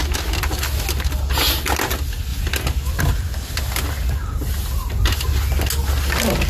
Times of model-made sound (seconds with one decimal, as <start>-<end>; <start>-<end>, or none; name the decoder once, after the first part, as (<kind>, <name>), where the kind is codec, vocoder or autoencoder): none